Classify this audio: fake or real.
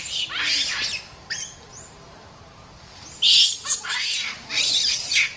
real